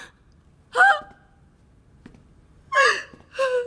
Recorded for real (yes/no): yes